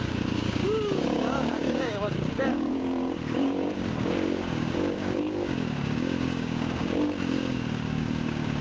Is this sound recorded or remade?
remade